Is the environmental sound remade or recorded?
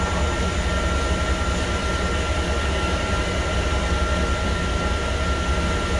recorded